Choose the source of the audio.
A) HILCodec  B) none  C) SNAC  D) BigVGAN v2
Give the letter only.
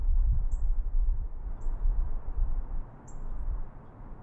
D